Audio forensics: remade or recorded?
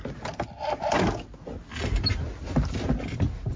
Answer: recorded